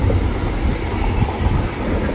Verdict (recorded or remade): recorded